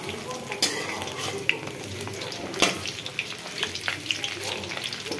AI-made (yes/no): no